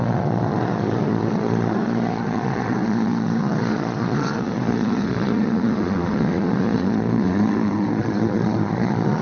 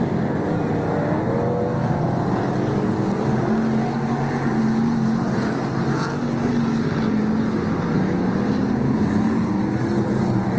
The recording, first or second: second